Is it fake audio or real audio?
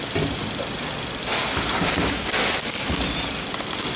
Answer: real